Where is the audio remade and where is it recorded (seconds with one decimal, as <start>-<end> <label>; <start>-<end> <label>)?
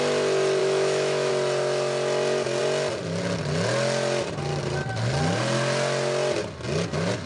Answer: 0.0-0.6 recorded; 0.6-1.3 remade; 1.3-7.3 recorded